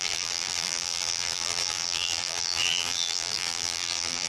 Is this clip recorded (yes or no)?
no